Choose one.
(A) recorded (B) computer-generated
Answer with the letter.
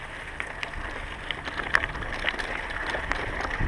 A